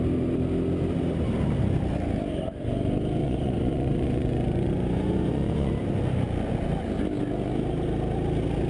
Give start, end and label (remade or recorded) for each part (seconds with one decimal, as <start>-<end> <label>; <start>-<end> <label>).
0.0-3.2 recorded; 3.2-5.7 remade; 5.7-8.7 recorded